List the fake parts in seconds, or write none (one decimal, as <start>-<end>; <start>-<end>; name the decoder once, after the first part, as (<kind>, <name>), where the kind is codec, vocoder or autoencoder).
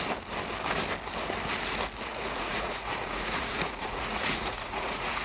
2.1-5.2 (vocoder, Vocos)